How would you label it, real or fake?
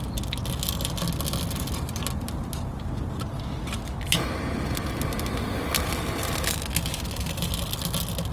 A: real